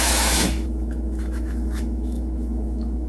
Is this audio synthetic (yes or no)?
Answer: yes